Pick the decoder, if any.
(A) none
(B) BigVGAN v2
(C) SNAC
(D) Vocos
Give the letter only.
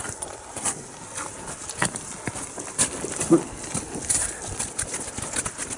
A